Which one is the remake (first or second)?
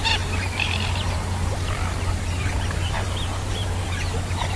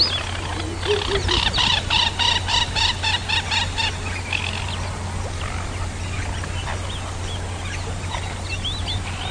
first